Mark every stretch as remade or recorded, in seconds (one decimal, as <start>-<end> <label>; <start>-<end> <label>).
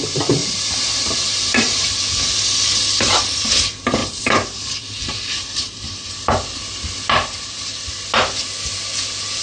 0.0-0.4 recorded; 0.4-2.0 remade; 2.0-4.0 recorded; 4.0-6.1 remade; 6.1-9.4 recorded